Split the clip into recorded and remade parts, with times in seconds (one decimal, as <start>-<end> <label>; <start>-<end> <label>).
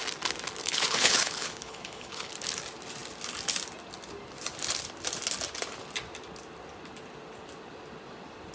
0.0-0.6 recorded; 0.6-2.3 remade; 2.3-8.5 recorded